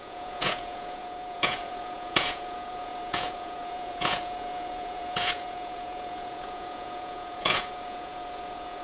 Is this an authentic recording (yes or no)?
no